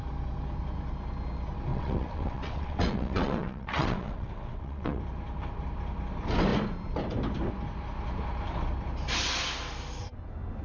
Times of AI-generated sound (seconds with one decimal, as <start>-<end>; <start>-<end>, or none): 1.7-5.0